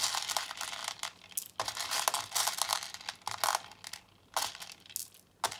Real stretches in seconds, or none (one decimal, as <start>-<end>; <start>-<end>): 0.0-5.6